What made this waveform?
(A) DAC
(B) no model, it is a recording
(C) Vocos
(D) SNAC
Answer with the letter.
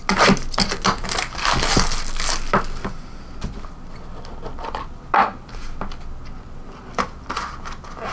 B